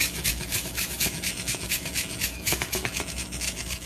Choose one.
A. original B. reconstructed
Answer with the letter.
B